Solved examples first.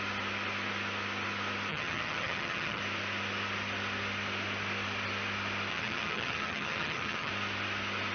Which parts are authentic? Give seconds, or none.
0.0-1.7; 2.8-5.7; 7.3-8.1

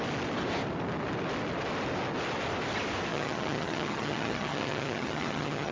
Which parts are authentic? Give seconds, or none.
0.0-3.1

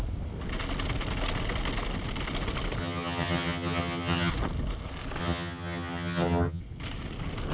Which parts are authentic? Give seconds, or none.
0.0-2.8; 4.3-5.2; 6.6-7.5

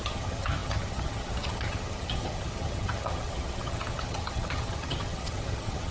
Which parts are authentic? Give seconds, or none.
none

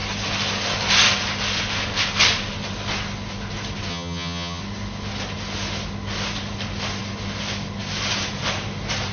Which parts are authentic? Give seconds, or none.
0.0-3.9; 4.6-9.1